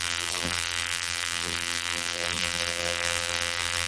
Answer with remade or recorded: remade